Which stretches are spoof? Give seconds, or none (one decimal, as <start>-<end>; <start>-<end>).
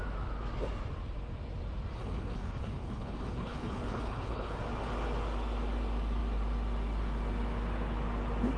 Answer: 1.9-4.6